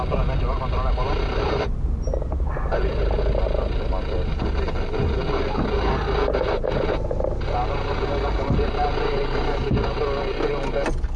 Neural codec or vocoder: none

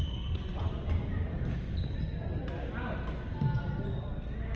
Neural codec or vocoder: none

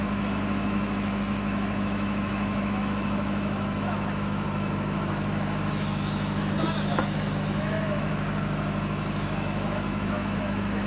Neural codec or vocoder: autoencoder, DAC-VAE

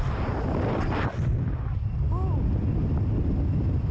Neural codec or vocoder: vocoder, BigVGAN v2